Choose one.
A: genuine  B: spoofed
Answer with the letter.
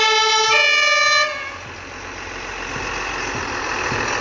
A